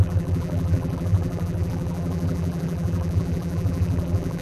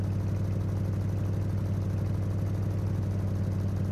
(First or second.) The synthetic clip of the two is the first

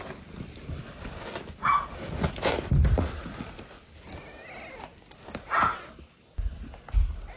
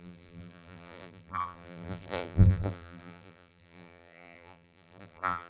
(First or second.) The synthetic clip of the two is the second